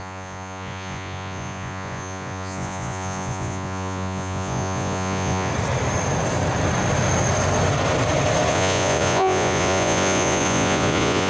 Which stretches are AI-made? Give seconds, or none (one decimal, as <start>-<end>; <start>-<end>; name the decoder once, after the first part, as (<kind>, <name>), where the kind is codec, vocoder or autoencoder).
0.0-5.5 (vocoder, Vocos); 8.5-11.3